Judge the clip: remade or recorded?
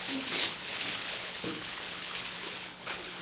remade